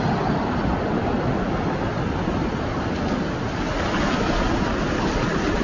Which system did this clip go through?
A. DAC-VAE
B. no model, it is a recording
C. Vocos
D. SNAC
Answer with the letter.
B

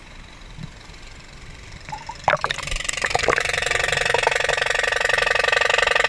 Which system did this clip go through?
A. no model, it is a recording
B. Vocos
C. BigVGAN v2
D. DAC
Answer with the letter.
A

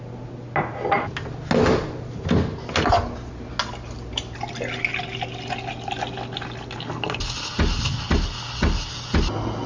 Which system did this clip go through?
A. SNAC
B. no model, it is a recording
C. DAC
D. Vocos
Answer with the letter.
B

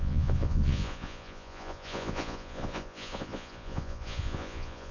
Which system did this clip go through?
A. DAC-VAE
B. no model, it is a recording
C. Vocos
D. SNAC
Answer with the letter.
C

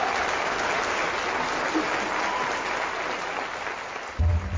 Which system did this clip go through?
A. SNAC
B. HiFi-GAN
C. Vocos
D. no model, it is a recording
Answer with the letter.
D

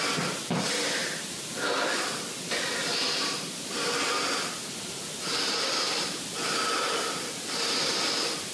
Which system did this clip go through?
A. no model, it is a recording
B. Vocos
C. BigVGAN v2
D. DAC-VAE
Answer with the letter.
A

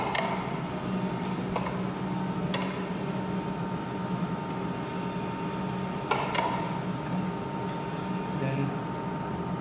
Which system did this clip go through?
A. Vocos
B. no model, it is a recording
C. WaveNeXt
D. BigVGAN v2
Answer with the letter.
B